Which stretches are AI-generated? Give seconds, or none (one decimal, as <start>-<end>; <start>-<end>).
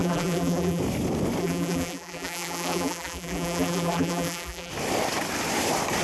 0.0-0.8; 1.4-4.7